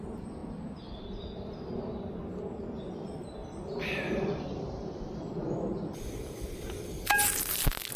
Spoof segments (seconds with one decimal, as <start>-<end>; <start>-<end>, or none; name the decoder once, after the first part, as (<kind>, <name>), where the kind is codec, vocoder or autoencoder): none